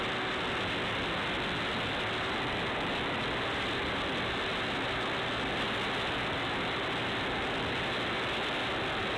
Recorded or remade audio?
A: recorded